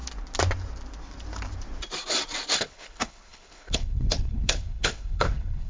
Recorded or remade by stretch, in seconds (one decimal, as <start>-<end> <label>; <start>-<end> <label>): 0.0-2.6 recorded; 2.6-5.7 remade